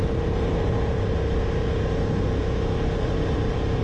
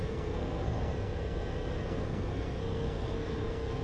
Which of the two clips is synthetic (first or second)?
second